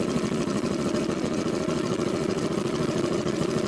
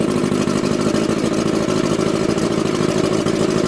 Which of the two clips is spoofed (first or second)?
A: first